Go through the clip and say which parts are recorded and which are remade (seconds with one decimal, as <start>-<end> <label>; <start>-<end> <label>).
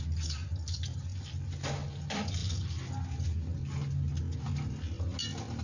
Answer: 0.0-5.6 recorded